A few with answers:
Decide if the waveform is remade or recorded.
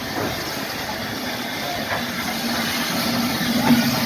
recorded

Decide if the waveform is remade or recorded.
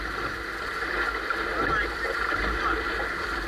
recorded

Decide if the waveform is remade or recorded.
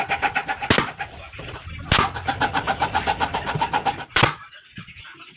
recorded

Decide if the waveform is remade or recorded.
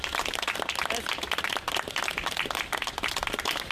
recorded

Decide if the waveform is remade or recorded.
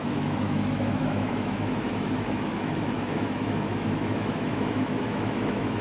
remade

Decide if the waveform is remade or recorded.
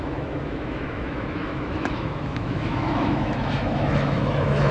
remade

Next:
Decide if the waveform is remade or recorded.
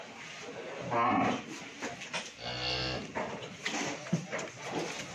recorded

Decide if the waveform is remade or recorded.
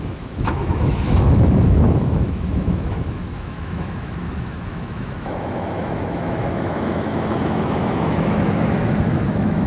remade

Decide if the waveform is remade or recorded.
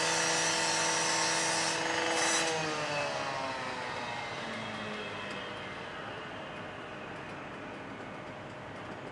recorded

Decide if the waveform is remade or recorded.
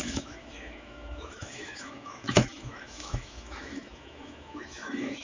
remade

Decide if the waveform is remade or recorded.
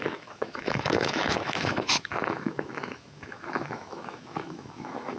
remade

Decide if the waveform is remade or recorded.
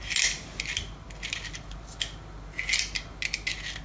recorded